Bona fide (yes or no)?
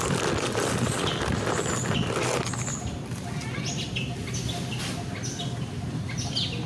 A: yes